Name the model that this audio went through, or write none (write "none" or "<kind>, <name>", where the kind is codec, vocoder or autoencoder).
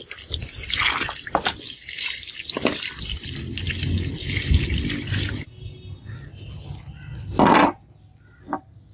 none